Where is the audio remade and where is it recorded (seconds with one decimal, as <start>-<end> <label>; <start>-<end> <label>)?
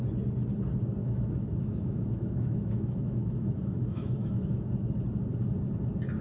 0.0-1.0 recorded; 1.0-4.7 remade; 4.7-6.2 recorded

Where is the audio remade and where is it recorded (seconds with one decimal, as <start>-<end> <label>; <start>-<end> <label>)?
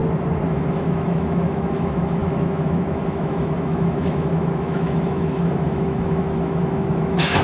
0.0-0.5 recorded; 0.5-7.4 remade